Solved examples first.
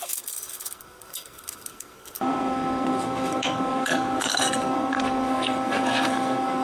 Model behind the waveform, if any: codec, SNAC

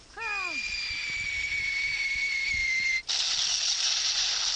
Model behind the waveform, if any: none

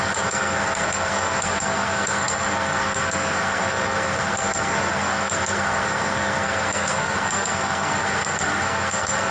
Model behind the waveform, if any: codec, SNAC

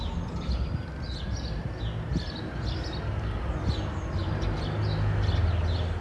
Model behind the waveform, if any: none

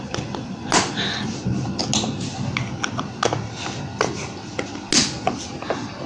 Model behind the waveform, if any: none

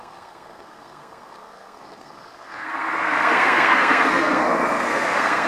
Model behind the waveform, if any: codec, SNAC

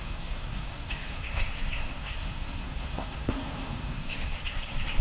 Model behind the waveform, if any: codec, SNAC